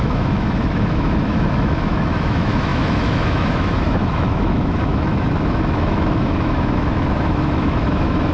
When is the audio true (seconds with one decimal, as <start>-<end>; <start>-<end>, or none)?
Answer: none